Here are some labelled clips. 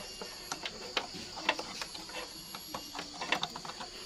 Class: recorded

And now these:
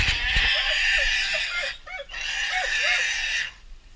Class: recorded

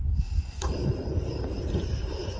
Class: recorded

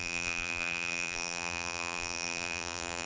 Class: remade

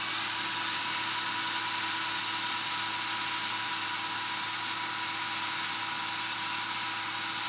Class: recorded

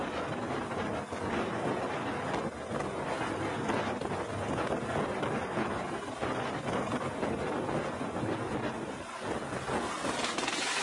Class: recorded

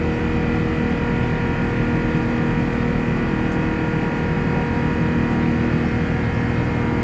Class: recorded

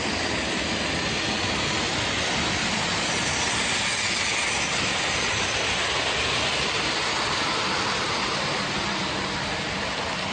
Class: recorded